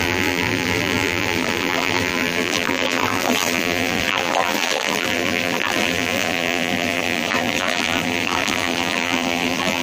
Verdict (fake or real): fake